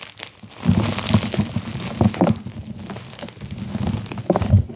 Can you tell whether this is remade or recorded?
recorded